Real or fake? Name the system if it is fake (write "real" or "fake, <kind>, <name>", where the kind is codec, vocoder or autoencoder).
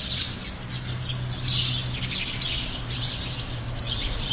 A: real